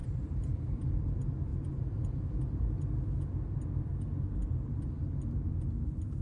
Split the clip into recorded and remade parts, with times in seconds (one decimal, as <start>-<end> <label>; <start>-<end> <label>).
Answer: 0.0-0.6 remade; 0.6-1.5 recorded; 1.5-2.2 remade; 2.2-4.4 recorded; 4.4-4.9 remade; 4.9-6.2 recorded